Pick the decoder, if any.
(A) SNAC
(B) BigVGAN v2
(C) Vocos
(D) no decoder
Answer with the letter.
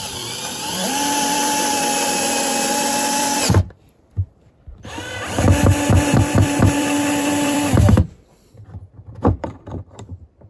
B